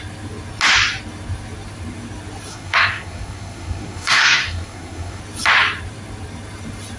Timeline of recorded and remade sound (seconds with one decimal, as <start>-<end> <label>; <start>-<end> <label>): 0.0-2.5 recorded; 2.5-5.2 remade; 5.2-7.0 recorded